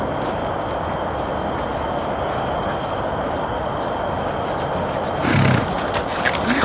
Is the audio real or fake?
real